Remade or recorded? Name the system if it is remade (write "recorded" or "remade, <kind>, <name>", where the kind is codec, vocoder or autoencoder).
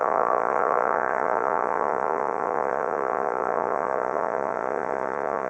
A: remade, vocoder, Vocos